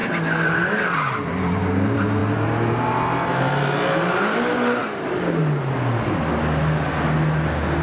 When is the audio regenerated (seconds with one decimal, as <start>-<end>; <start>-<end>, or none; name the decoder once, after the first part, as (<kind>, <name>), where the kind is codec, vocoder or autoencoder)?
none